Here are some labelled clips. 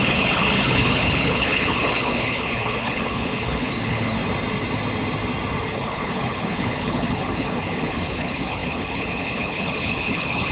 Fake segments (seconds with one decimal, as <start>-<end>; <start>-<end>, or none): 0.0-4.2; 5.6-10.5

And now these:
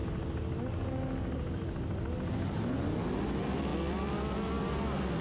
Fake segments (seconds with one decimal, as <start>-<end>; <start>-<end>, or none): none

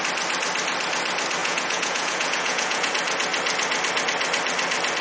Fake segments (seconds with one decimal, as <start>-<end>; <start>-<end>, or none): 1.4-2.9

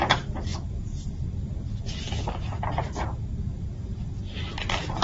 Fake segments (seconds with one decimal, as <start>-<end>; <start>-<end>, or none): none

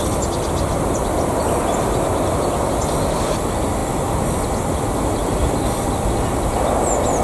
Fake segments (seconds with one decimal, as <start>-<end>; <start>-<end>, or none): none

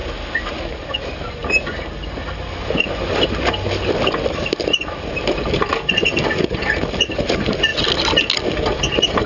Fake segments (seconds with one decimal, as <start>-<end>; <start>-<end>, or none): none

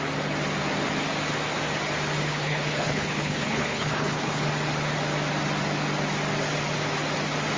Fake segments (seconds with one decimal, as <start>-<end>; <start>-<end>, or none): 2.3-4.4

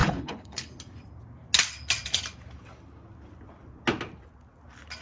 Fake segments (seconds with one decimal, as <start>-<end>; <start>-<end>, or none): 0.0-0.7